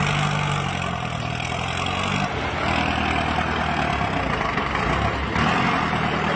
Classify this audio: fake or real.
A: real